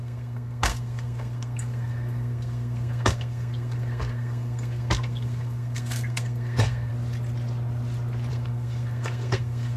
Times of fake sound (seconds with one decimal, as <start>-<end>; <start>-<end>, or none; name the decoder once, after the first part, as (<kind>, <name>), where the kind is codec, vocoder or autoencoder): 0.0-6.9 (codec, SNAC); 8.3-9.8